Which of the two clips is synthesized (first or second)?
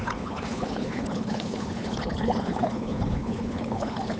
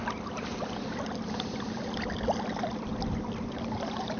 first